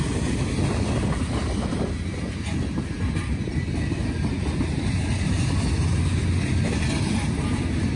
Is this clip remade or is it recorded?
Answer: recorded